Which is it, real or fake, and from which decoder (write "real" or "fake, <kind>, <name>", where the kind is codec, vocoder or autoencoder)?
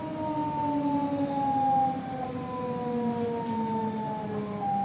real